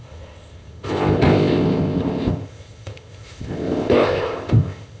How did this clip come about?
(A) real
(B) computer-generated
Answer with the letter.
B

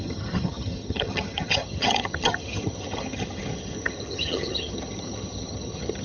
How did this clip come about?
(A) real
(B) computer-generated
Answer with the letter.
B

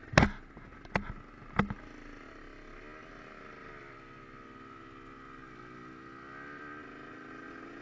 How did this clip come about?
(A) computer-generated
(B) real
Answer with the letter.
B